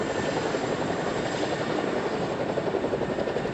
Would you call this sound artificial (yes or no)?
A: no